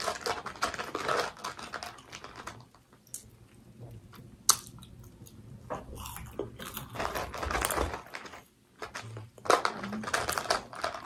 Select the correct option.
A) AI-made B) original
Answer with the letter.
B